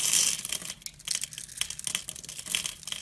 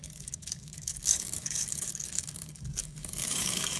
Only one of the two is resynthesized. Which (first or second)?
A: second